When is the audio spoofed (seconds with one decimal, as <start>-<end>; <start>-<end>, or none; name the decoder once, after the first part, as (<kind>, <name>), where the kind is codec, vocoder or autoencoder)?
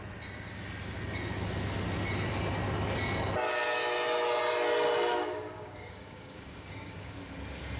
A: 5.1-7.2 (codec, DAC)